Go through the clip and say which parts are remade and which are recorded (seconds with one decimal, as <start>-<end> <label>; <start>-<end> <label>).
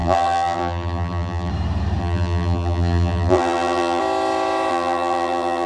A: 0.0-1.5 remade; 1.5-2.0 recorded; 2.0-4.0 remade; 4.0-4.7 recorded; 4.7-5.7 remade